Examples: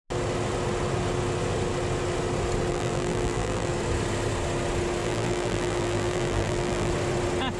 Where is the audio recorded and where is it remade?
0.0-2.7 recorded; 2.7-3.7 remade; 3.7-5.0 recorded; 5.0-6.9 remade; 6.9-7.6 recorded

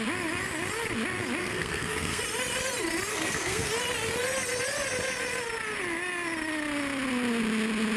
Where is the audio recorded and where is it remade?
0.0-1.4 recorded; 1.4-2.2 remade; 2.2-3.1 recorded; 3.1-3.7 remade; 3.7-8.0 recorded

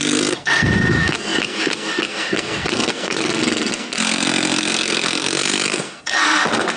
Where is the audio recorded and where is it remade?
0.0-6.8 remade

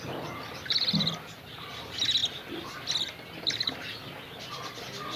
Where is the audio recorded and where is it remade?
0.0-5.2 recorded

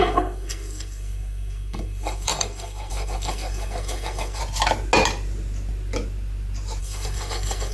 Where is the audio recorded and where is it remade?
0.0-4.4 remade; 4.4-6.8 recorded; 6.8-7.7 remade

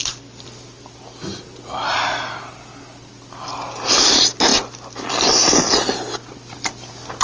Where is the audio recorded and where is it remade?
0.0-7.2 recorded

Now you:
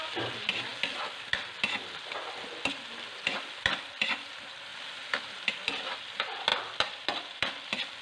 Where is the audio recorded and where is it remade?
0.0-0.7 remade; 0.7-2.7 recorded; 2.7-4.7 remade; 4.7-5.5 recorded; 5.5-8.0 remade

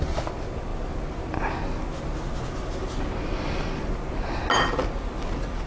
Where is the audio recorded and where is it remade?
0.0-5.7 recorded